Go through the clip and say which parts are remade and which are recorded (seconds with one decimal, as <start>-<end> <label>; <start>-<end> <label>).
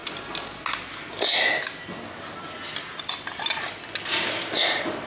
0.0-5.1 recorded